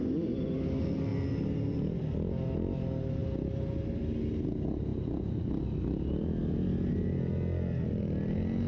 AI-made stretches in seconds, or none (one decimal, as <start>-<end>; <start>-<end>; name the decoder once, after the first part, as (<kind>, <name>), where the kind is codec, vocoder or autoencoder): none